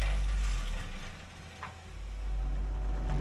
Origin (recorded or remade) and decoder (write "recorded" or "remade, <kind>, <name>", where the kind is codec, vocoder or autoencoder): recorded